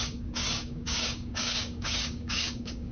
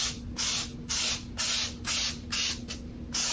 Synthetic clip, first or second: first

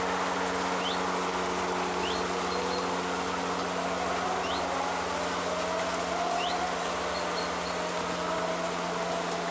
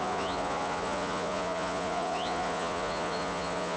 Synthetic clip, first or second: second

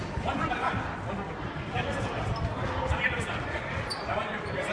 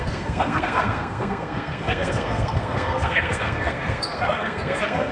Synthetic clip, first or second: second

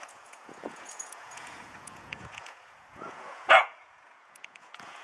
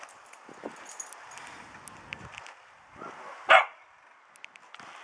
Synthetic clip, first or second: first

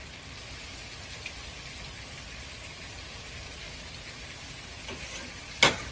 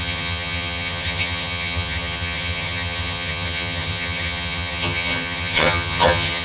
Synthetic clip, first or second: second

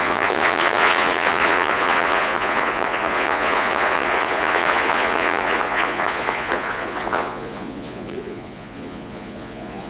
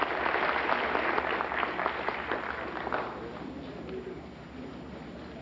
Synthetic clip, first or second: first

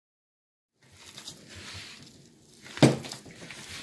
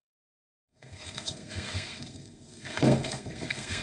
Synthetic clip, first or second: second